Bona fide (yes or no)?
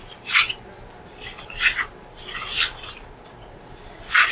yes